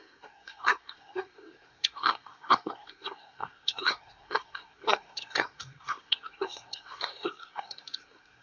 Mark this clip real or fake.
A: fake